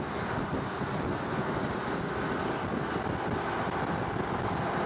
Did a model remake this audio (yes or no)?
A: no